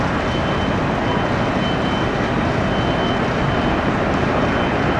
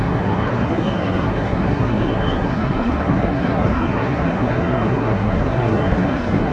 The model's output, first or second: second